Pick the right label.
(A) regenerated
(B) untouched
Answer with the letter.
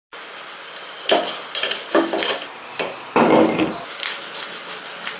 B